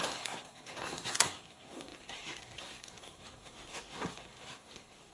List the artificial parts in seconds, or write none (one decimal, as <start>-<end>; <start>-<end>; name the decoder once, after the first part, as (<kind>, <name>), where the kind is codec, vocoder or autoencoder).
0.0-5.1 (codec, SNAC)